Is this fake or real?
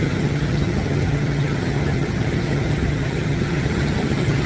fake